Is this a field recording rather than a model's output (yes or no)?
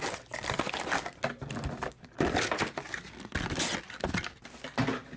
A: yes